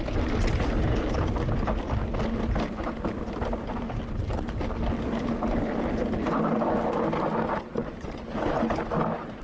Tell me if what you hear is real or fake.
real